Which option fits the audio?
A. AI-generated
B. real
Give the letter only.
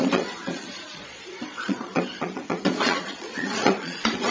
A